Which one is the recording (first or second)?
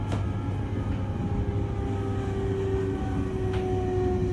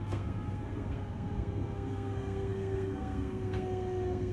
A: first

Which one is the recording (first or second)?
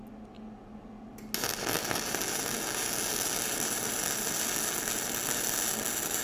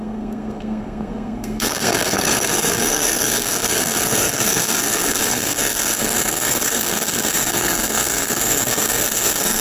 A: first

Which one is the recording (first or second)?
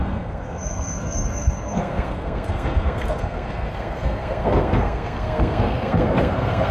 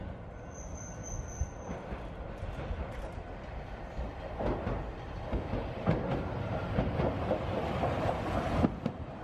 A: second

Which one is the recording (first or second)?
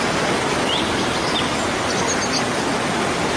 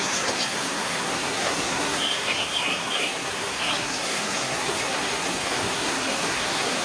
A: first